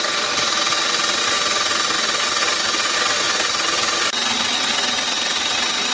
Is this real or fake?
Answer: real